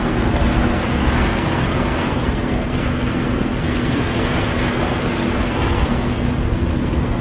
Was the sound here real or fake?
fake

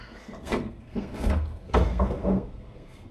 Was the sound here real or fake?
fake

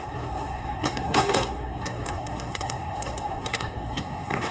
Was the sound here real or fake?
fake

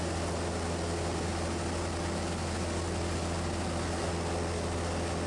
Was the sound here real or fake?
real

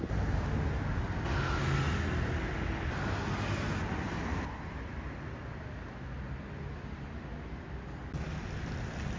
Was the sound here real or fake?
real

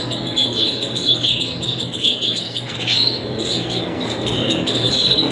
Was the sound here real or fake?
fake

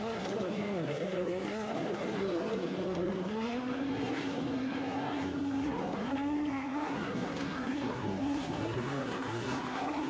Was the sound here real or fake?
fake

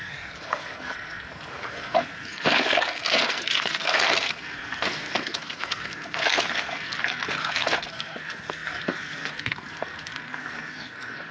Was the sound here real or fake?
fake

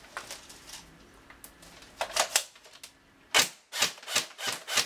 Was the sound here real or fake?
real